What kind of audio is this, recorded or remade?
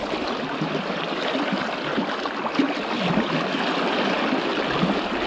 recorded